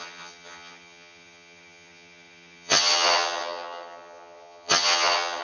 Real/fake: fake